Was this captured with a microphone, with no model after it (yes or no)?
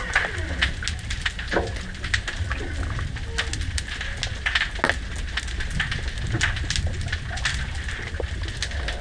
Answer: yes